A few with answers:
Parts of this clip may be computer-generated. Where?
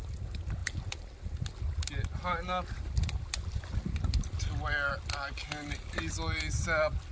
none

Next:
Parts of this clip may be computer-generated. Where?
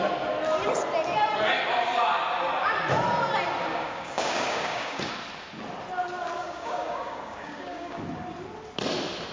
3.7-5.1 (codec, DAC); 6.4-8.0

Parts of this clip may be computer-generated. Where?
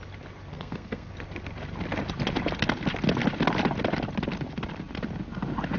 0.5-1.1 (codec, SNAC)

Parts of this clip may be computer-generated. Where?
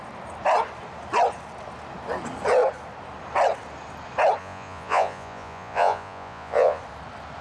4.4-6.8 (vocoder, Vocos)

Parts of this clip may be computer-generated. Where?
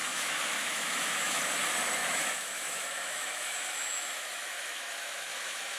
0.0-1.4 (autoencoder, DAC-VAE); 2.0-5.8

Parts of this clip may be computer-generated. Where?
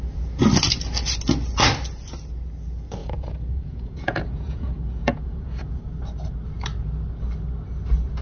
3.0-5.8 (vocoder, Vocos)